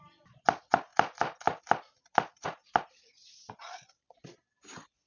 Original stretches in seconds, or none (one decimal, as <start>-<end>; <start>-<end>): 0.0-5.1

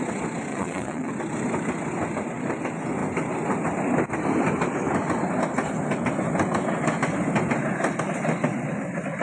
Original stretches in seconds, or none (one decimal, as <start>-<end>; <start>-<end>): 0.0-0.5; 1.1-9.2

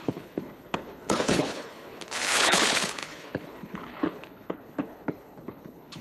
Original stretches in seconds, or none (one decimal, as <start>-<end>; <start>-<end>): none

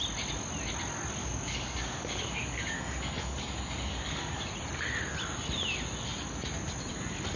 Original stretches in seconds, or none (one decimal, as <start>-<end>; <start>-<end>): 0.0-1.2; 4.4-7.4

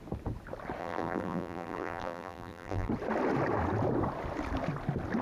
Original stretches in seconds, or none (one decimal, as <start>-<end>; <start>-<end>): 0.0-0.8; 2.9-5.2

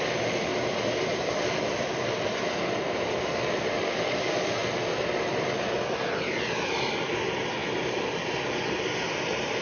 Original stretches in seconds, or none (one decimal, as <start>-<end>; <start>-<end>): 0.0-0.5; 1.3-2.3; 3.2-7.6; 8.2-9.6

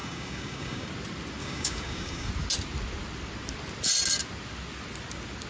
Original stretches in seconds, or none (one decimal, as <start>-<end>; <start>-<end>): 0.9-1.4; 2.3-5.5